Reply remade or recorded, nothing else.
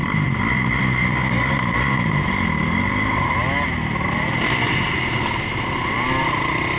recorded